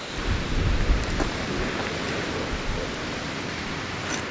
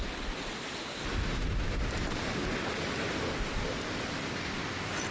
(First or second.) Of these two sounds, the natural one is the second